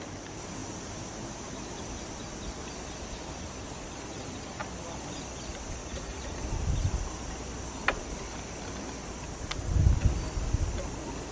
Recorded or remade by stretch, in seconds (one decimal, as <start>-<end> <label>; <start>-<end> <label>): 0.0-5.8 recorded; 5.8-6.4 remade; 6.4-11.3 recorded